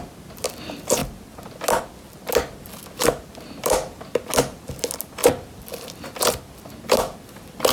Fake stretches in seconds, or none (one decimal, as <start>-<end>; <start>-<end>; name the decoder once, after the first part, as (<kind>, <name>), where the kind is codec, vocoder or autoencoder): none